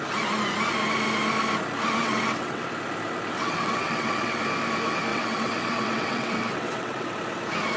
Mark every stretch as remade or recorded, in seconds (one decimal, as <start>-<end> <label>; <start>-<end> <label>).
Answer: 0.0-2.0 recorded; 2.0-2.7 remade; 2.7-3.3 recorded; 3.3-4.4 remade; 4.4-5.1 recorded; 5.1-7.1 remade; 7.1-7.8 recorded